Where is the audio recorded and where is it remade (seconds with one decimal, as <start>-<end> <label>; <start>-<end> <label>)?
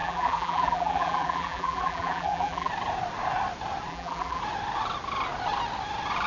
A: 0.0-2.7 remade; 2.7-3.9 recorded; 3.9-4.4 remade; 4.4-6.3 recorded